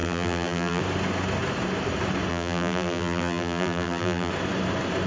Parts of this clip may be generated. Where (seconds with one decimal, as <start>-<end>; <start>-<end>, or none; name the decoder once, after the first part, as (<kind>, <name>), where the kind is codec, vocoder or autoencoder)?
0.0-0.8 (vocoder, BigVGAN v2); 2.3-4.3